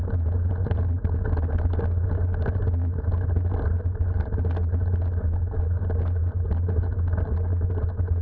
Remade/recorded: recorded